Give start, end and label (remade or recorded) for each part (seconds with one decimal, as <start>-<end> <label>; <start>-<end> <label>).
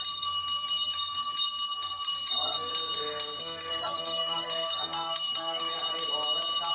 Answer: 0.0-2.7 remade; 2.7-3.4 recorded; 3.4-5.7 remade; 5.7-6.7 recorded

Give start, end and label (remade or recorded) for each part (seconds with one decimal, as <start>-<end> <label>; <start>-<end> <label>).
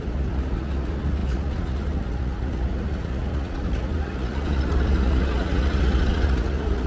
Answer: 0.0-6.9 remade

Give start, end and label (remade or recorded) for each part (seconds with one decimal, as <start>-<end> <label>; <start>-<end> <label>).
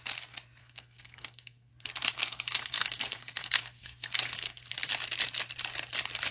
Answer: 0.0-0.6 recorded; 0.6-1.7 remade; 1.7-2.2 recorded; 2.2-4.7 remade; 4.7-6.3 recorded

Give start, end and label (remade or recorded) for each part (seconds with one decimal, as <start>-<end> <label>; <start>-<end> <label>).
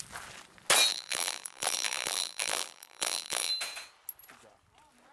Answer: 0.0-0.9 recorded; 0.9-3.5 remade; 3.5-5.1 recorded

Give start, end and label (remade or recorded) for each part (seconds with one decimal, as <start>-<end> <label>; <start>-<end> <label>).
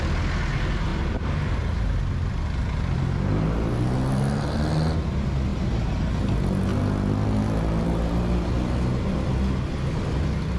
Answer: 0.0-10.6 recorded